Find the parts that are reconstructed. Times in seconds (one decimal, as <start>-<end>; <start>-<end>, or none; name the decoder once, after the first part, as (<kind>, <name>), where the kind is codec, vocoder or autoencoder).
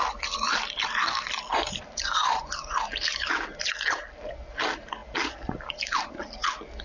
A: none